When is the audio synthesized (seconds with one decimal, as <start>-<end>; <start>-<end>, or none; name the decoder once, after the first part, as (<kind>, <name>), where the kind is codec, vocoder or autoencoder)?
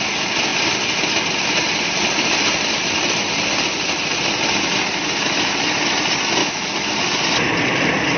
6.4-6.9 (autoencoder, DAC-VAE)